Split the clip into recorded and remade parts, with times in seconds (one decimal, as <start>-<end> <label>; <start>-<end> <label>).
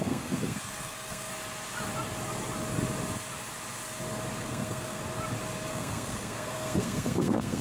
0.0-1.3 remade; 1.3-4.4 recorded; 4.4-5.0 remade; 5.0-5.7 recorded; 5.7-7.6 remade